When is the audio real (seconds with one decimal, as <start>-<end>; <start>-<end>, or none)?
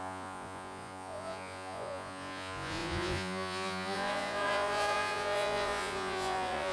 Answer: none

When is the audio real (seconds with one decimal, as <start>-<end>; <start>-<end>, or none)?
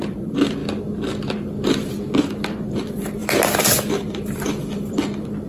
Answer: 0.6-1.9; 3.2-4.0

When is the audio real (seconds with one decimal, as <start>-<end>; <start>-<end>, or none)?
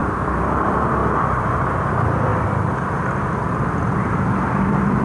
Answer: 0.0-0.5; 2.3-5.0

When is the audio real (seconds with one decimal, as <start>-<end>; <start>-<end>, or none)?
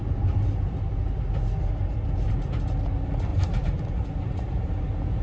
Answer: 0.0-3.3; 4.8-5.2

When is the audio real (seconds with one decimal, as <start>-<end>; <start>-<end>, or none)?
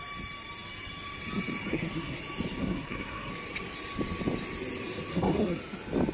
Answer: 0.0-1.7; 2.2-2.6; 3.3-5.1; 5.6-6.1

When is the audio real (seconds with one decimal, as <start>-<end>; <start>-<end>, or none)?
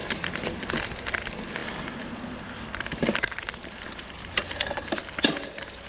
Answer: 0.8-1.6; 5.0-5.9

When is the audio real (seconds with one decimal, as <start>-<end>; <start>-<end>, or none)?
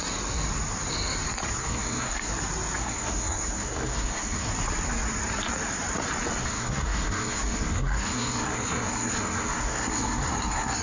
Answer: 0.0-1.6; 2.3-2.8; 4.5-6.4